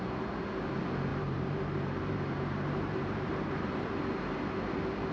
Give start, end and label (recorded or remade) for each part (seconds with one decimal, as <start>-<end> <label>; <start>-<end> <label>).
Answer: 0.0-1.1 recorded; 1.1-4.0 remade; 4.0-5.1 recorded